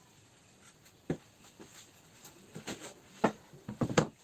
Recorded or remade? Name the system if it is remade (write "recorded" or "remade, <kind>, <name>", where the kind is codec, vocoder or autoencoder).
recorded